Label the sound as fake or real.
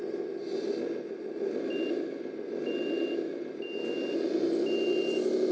real